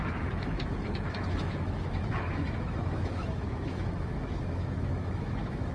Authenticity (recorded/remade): remade